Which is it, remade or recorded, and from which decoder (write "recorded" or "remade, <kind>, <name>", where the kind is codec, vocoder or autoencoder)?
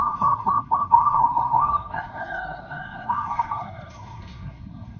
remade, codec, SNAC